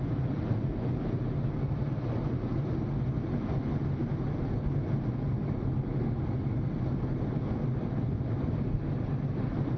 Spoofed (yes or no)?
no